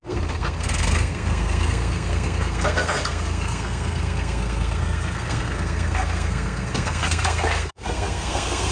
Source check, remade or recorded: remade